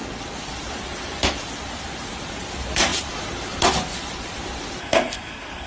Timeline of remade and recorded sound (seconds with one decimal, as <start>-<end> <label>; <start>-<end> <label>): 0.0-4.8 recorded; 4.8-5.7 remade